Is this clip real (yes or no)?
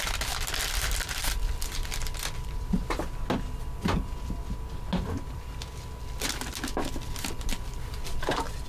yes